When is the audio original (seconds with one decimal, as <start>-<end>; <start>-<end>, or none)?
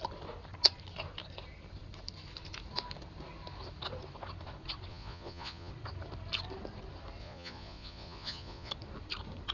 0.0-4.9; 5.7-7.2; 8.7-9.5